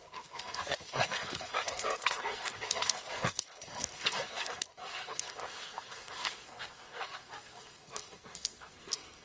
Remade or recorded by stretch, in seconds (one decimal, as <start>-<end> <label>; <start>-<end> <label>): 0.0-9.2 remade